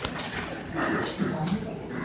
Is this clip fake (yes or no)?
no